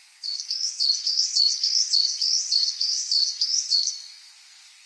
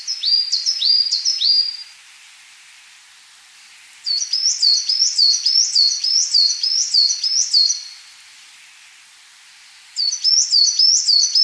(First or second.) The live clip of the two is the second